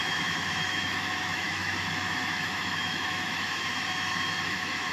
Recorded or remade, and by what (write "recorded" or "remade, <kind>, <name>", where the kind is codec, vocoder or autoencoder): remade, autoencoder, DAC-VAE